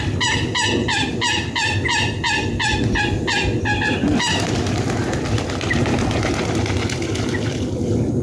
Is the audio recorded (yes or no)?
yes